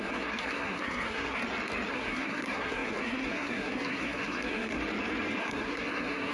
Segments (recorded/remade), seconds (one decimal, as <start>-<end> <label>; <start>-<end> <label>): 0.0-1.4 remade; 1.4-1.9 recorded; 1.9-4.8 remade; 4.8-5.4 recorded; 5.4-6.3 remade